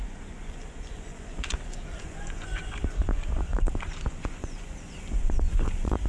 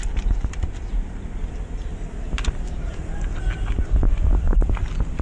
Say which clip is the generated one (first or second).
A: first